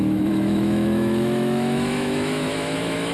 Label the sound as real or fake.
fake